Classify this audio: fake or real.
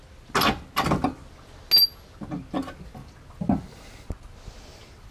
real